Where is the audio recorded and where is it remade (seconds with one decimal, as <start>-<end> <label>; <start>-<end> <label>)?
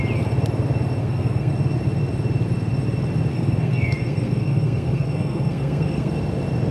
0.0-1.0 recorded; 1.0-1.5 remade; 1.5-3.3 recorded; 3.3-6.1 remade; 6.1-6.7 recorded